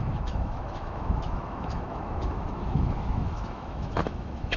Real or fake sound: fake